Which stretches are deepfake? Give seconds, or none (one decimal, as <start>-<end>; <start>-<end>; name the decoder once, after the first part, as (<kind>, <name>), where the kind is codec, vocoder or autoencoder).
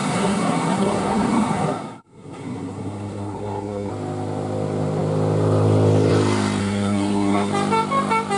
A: 0.0-3.9 (codec, SNAC); 6.6-7.5